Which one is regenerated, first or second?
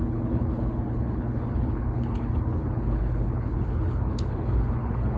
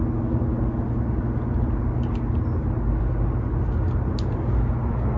first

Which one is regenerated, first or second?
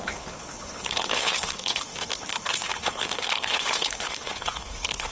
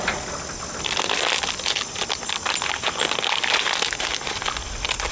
first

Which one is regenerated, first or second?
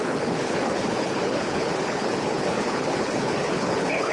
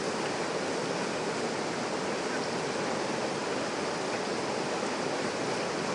first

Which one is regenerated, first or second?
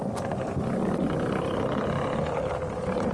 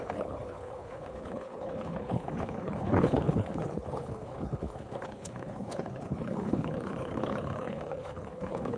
second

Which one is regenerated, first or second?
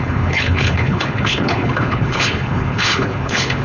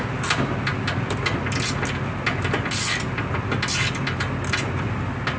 first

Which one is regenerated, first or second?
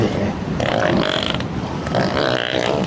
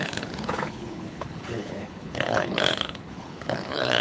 second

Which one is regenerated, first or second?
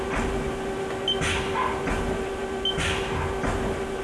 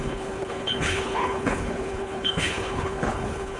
second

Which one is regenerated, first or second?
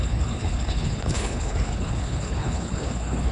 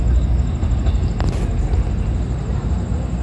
first